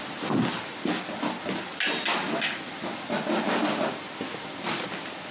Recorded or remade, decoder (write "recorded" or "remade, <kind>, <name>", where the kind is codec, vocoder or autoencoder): recorded